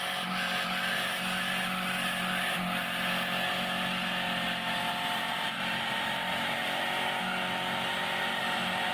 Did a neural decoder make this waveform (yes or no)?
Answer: no